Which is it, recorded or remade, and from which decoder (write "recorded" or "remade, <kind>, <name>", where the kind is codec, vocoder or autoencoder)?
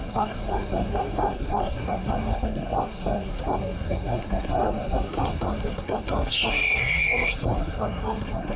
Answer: remade, codec, SNAC